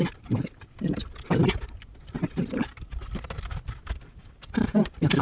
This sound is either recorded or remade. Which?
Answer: recorded